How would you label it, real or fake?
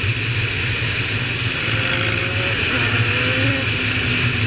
real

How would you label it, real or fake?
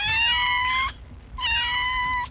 real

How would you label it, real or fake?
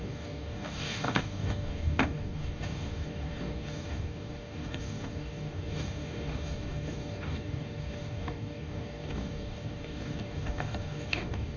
fake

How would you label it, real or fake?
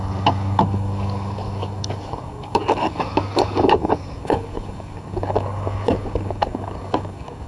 fake